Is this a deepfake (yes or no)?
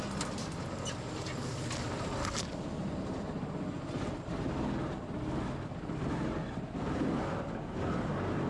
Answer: no